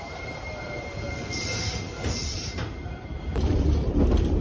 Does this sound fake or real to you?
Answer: fake